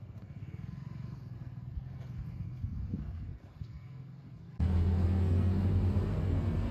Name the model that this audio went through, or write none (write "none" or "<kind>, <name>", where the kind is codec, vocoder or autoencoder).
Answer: codec, SNAC